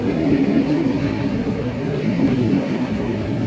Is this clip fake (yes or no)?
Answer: yes